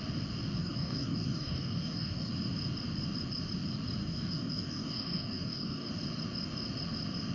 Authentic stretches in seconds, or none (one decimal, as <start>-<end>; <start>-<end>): 0.0-0.6; 2.3-4.0; 5.9-7.3